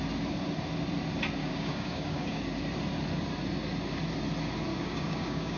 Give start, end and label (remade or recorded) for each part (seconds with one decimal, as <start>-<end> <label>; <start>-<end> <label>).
0.0-1.4 recorded; 1.4-2.4 remade; 2.4-4.7 recorded; 4.7-5.6 remade